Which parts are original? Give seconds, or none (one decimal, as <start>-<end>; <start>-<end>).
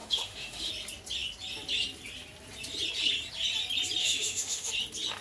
0.7-4.0; 4.7-5.2